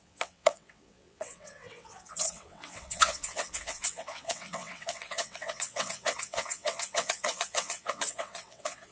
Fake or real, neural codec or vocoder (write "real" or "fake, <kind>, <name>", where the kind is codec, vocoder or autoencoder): fake, vocoder, WaveNeXt